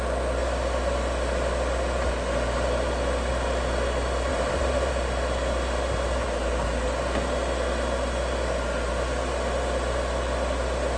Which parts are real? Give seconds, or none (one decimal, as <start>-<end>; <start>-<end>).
0.0-4.3; 4.9-11.0